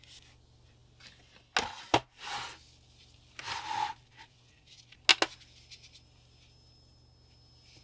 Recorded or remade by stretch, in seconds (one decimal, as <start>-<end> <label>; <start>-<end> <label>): 0.0-7.8 recorded